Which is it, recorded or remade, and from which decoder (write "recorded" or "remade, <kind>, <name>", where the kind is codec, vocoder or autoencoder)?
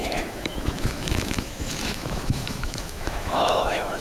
remade, autoencoder, DAC-VAE